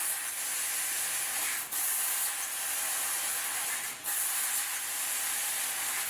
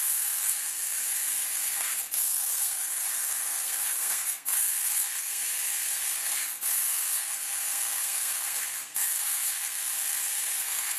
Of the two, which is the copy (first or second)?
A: second